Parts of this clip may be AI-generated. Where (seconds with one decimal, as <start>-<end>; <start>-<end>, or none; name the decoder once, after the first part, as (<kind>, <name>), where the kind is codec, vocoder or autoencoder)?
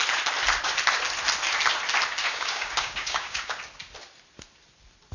2.2-3.6 (codec, DAC)